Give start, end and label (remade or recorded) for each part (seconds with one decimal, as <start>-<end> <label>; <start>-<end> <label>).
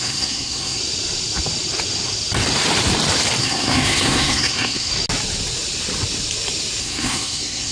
0.0-0.8 remade; 0.8-3.4 recorded; 3.4-4.9 remade; 4.9-6.8 recorded; 6.8-7.7 remade